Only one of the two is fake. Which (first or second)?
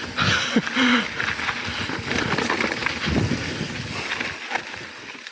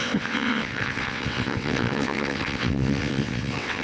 second